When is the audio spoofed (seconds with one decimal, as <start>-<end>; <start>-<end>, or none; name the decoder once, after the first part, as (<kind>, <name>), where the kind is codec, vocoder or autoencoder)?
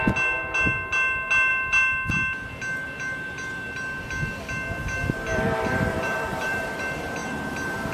4.8-6.8 (vocoder, BigVGAN v2); 7.2-7.9